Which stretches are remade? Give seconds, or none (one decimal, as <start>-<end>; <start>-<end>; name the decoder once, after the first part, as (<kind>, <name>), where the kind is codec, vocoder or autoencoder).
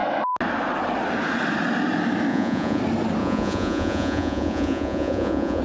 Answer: 2.3-2.8 (vocoder, Vocos); 3.2-5.6